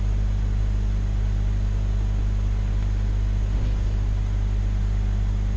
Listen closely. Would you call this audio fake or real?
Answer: real